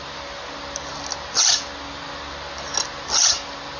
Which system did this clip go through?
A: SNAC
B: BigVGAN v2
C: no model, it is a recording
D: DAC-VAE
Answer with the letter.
C